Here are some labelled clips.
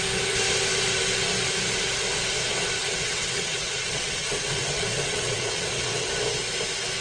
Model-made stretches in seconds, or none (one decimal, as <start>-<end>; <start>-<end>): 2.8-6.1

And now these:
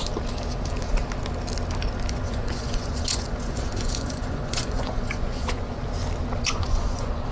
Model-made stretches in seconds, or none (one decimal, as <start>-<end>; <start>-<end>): 2.1-5.8; 6.4-7.3

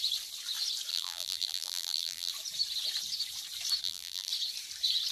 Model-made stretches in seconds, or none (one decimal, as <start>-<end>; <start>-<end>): 0.9-2.3; 3.8-4.3